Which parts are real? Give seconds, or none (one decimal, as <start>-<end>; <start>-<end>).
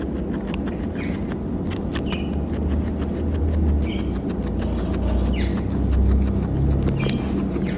0.0-7.8